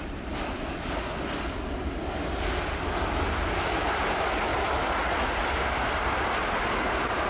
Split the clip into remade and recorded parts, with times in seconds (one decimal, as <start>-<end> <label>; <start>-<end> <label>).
0.0-7.3 recorded